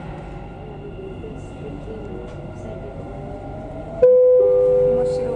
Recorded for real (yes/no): yes